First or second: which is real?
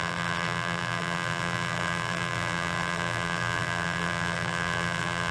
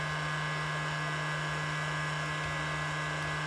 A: second